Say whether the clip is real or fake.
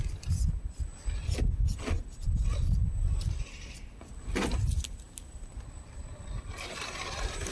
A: real